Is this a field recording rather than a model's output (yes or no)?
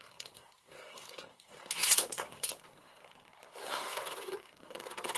no